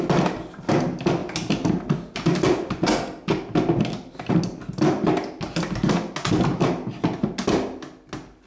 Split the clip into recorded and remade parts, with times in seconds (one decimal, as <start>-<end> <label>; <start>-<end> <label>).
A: 0.0-8.5 recorded